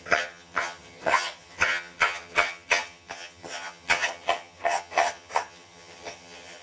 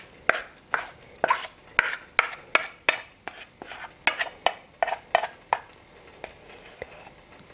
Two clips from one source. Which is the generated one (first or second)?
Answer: first